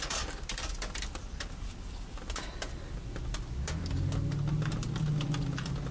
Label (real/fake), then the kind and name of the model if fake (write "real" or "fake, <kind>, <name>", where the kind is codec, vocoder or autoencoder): real